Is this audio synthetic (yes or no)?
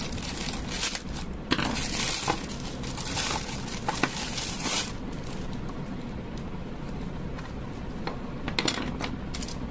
no